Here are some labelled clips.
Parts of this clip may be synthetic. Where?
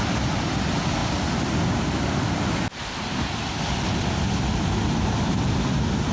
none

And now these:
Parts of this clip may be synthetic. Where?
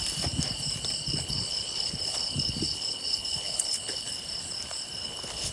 1.1-4.1; 5.0-5.5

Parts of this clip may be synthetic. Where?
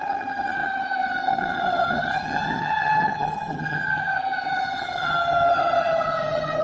0.0-6.6